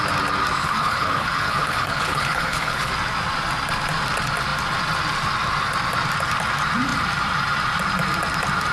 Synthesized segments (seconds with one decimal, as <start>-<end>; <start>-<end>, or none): 0.6-2.9